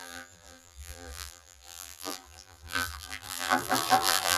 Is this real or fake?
fake